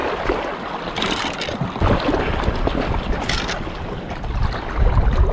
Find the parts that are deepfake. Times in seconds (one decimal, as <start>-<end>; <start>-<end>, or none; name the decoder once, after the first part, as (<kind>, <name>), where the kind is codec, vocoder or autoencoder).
0.0-3.2 (vocoder, BigVGAN v2)